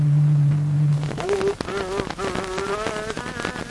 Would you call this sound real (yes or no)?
yes